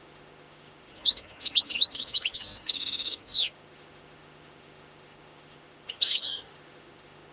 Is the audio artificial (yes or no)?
yes